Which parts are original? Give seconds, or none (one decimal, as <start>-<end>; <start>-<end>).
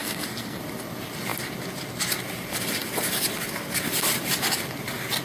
0.6-5.2